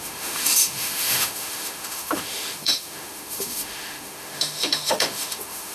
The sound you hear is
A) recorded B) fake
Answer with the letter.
B